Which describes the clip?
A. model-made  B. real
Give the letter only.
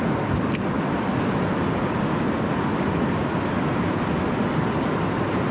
B